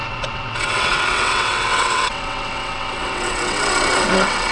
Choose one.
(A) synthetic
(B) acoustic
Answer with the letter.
A